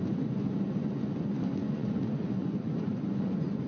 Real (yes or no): no